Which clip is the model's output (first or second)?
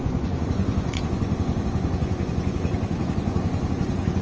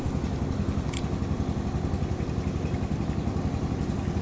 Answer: first